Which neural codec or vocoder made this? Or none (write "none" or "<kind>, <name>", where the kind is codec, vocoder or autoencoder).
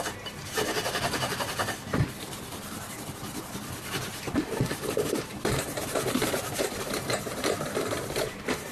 vocoder, BigVGAN v2